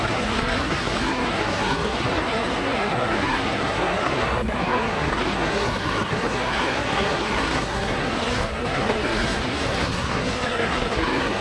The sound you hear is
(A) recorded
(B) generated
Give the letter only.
B